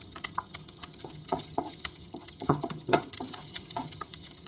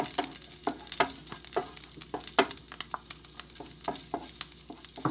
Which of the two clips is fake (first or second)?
first